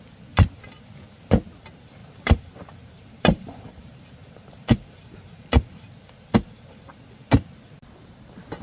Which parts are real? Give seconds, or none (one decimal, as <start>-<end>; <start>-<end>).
0.0-2.0; 5.8-8.6